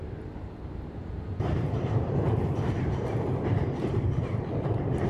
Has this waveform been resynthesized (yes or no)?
yes